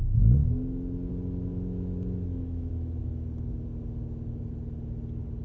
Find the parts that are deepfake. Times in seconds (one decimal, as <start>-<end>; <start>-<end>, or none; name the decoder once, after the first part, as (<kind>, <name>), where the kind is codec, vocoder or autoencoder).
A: 1.5-2.7 (autoencoder, DAC-VAE)